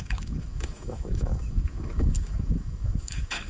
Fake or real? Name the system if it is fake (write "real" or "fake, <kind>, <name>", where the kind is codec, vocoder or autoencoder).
fake, autoencoder, DAC-VAE